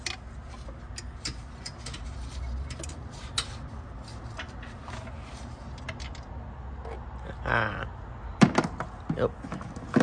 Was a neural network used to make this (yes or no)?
no